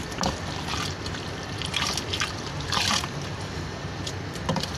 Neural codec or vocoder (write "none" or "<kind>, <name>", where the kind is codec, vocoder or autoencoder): none